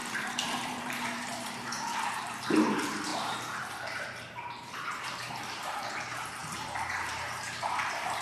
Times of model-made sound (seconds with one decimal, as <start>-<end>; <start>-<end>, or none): 0.0-8.2